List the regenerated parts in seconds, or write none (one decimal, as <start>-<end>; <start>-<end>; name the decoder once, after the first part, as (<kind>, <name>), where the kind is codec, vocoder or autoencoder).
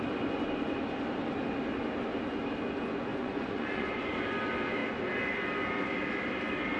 3.1-4.0 (vocoder, Vocos)